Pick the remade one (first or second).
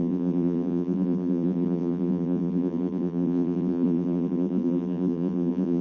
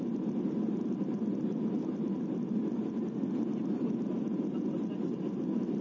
first